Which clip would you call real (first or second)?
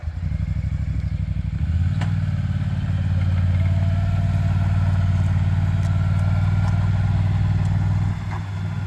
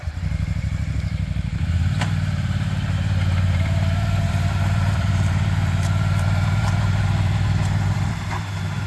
first